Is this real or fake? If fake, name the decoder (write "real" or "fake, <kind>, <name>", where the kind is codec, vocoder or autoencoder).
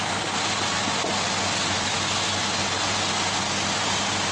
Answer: real